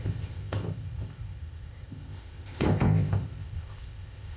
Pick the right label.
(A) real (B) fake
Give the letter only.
B